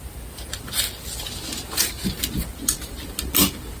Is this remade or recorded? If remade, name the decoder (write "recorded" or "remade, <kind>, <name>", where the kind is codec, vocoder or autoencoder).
recorded